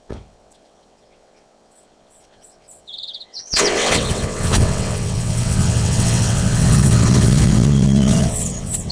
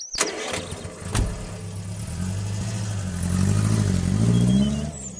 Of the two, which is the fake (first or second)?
first